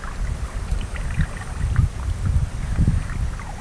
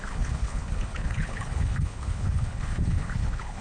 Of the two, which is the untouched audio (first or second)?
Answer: first